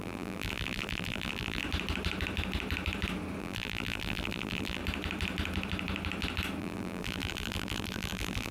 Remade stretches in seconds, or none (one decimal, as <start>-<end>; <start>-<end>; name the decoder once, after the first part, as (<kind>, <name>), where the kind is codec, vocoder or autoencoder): 0.0-1.6 (vocoder, BigVGAN v2); 3.4-4.8; 6.6-8.5